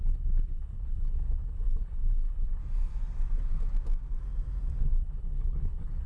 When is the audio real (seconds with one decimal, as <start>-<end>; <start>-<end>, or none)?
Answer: 2.6-4.8